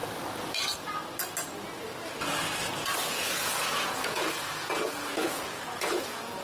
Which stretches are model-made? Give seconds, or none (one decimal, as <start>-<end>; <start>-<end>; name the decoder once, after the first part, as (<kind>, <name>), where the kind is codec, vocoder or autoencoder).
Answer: 3.1-6.4 (vocoder, Vocos)